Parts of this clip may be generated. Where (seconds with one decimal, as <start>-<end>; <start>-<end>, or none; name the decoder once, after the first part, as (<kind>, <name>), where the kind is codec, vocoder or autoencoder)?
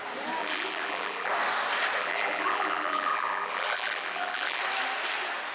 0.4-1.3 (vocoder, BigVGAN v2); 2.0-4.6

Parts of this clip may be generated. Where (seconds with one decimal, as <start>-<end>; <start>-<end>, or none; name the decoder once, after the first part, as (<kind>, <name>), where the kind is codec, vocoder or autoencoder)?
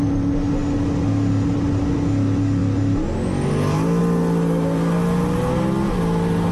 none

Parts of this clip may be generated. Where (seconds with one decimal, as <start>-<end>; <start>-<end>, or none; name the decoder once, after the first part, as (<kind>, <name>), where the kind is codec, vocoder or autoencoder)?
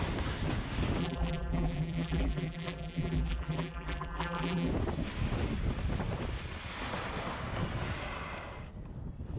1.0-4.7 (vocoder, BigVGAN v2)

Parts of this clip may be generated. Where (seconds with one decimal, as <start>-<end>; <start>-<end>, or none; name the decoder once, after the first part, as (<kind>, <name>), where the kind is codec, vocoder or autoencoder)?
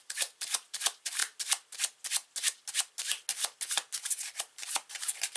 0.0-1.2 (vocoder, BigVGAN v2); 4.4-5.4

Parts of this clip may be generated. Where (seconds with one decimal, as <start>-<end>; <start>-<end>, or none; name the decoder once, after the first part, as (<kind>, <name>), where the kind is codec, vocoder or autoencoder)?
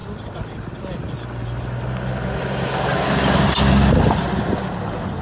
0.0-0.8 (vocoder, BigVGAN v2)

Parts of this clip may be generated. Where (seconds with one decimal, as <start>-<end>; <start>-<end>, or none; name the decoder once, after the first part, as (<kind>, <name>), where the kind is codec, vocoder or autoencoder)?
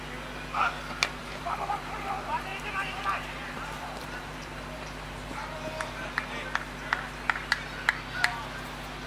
1.2-2.1 (vocoder, BigVGAN v2); 2.5-5.3